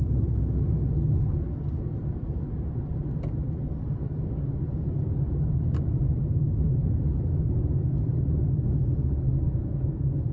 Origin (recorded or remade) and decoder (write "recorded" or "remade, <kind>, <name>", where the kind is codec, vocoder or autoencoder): recorded